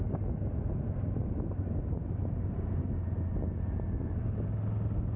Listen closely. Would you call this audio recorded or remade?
recorded